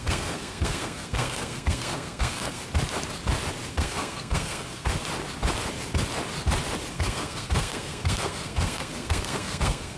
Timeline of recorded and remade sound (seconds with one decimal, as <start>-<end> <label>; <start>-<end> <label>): 0.0-2.6 remade; 2.6-3.7 recorded; 3.7-4.9 remade; 4.9-6.9 recorded; 6.9-10.0 remade